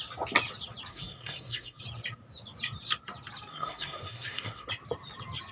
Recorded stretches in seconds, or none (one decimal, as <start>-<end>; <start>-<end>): 0.0-0.9; 1.8-3.5; 4.7-5.5